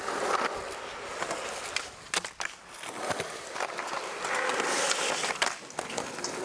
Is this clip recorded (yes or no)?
yes